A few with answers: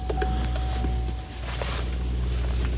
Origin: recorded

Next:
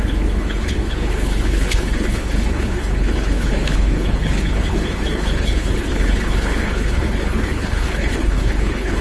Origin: remade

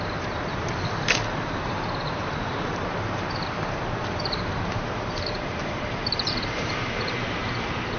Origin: remade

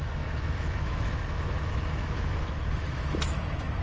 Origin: remade